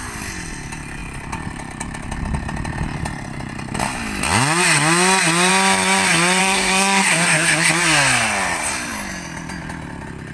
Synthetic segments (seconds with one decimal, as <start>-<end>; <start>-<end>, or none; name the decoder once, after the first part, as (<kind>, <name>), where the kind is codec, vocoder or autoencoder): 6.4-7.7 (codec, SNAC)